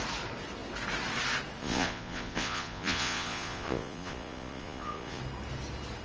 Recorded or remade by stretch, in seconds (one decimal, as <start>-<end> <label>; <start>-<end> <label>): 0.0-1.6 recorded; 1.6-5.2 remade; 5.2-6.0 recorded